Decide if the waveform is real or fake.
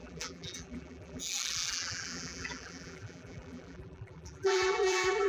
fake